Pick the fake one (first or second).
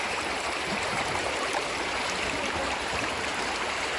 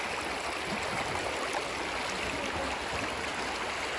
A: first